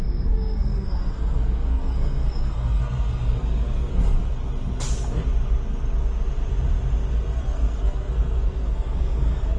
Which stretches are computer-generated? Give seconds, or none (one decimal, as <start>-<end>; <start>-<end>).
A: 0.0-4.4; 7.1-9.6